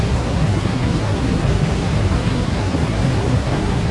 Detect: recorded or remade remade